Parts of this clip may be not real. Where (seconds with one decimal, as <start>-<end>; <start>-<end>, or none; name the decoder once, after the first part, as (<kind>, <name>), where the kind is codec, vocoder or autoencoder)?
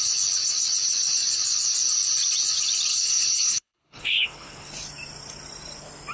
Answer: 2.9-4.7 (codec, HILCodec)